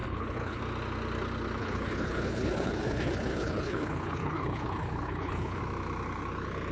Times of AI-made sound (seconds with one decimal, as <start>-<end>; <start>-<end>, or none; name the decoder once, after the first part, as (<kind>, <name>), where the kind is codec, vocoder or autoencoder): 0.0-0.6 (codec, HILCodec); 1.6-5.6

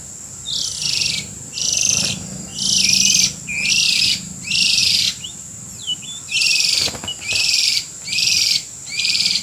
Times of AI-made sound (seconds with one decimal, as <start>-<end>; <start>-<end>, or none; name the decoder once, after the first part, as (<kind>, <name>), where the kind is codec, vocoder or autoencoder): 0.0-2.5 (vocoder, BigVGAN v2); 3.7-9.4

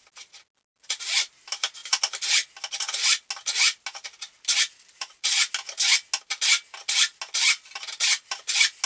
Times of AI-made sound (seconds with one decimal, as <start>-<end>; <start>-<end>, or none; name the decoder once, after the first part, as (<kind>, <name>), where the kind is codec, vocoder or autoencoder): none

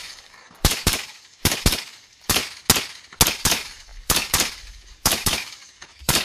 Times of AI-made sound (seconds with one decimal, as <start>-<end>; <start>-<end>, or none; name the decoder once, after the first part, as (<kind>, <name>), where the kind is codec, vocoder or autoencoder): 0.0-2.4 (codec, DAC); 3.3-6.2

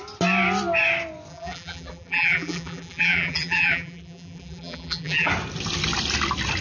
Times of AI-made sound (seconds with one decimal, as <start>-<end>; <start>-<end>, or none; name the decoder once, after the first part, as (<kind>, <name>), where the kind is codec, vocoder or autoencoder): 1.3-5.3 (vocoder, BigVGAN v2)

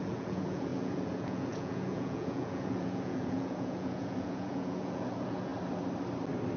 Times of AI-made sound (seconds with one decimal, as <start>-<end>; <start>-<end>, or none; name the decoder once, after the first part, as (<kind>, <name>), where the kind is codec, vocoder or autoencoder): 0.0-5.5 (vocoder, Vocos)